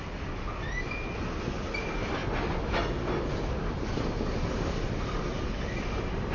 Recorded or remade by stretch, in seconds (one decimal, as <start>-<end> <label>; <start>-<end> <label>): 0.0-6.3 recorded